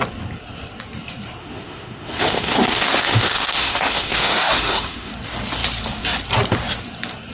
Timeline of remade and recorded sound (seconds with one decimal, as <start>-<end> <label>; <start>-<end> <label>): 0.0-1.4 recorded; 1.4-5.1 remade; 5.1-7.3 recorded